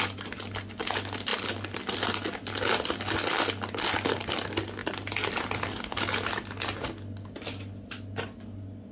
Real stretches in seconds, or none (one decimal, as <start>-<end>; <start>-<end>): 0.0-8.9